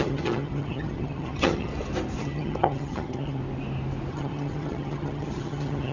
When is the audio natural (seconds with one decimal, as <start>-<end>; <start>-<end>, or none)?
1.7-2.2; 3.4-4.1